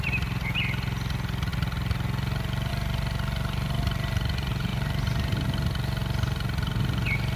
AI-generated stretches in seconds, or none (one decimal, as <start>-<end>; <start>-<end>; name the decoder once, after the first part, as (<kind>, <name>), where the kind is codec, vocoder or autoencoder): none